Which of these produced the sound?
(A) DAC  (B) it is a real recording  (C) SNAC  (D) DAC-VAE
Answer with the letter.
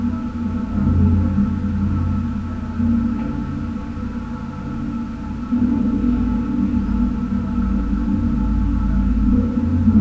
B